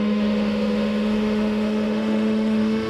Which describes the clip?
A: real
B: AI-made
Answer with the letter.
B